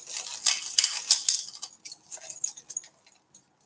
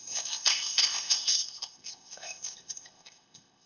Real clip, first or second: first